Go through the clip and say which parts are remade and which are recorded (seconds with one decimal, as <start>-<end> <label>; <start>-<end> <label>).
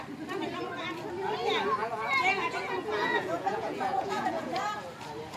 0.0-1.8 recorded; 1.8-4.6 remade; 4.6-5.4 recorded